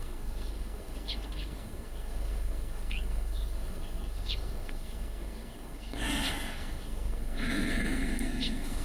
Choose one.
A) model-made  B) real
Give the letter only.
A